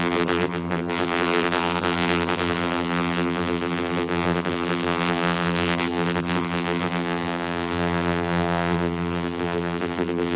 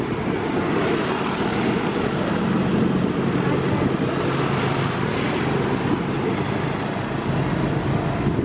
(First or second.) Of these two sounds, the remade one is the first